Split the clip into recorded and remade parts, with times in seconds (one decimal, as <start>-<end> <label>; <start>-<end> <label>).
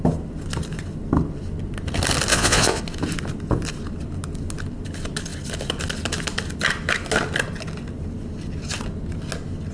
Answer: 0.0-2.3 recorded; 2.3-2.8 remade; 2.8-9.7 recorded